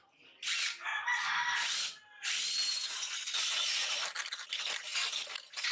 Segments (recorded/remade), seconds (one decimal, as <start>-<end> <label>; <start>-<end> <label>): 0.0-2.7 recorded; 2.7-4.0 remade; 4.0-5.7 recorded